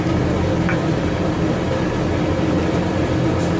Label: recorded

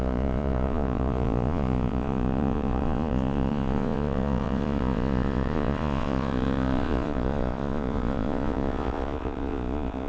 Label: remade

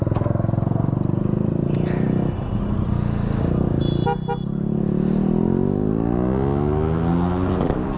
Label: recorded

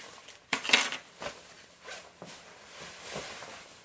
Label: recorded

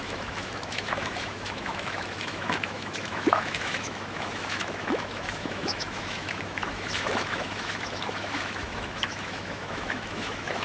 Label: remade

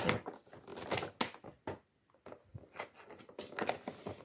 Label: recorded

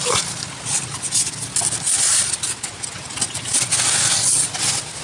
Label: recorded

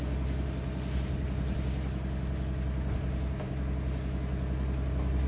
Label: recorded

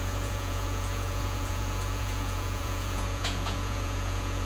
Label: remade